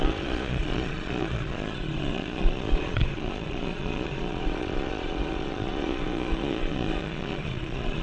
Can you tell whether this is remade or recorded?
remade